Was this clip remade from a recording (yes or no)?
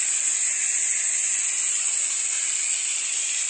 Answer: no